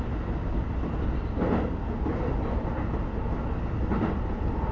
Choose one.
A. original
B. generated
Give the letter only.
A